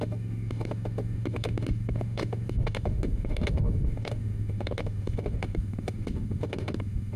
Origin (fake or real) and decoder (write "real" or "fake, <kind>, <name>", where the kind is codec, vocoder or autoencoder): fake, autoencoder, DAC-VAE